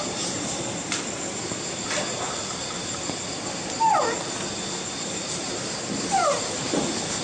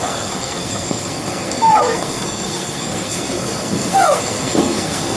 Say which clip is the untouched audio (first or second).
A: first